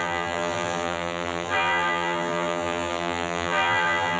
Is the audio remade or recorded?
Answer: remade